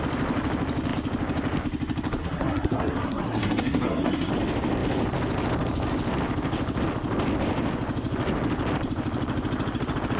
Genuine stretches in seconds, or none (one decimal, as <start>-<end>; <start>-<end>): 0.0-2.2; 4.3-10.2